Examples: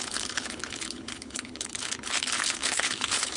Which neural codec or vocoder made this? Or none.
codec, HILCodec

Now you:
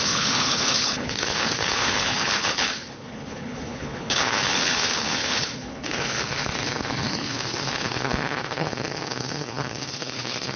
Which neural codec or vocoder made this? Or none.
codec, HILCodec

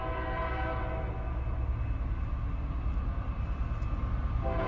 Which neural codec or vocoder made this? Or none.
none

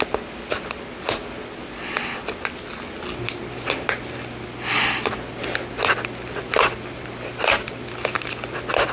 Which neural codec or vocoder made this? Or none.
none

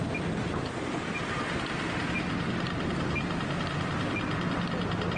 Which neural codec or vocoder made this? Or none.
none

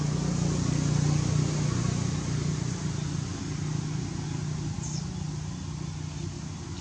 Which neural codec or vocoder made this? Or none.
none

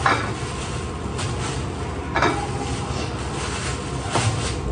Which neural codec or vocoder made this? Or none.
none